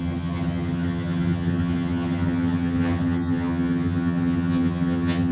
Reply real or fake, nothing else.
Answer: fake